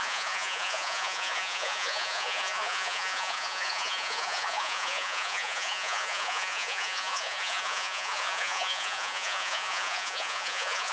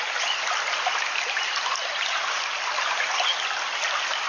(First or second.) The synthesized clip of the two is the first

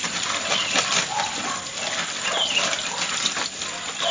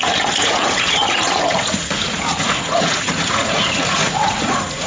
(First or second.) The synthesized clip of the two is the second